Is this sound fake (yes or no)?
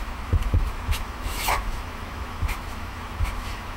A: yes